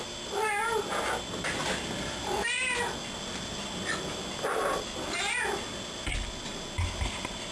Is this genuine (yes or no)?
yes